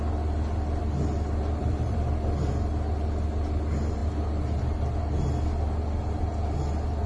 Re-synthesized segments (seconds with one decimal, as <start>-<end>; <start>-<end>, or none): 1.6-2.1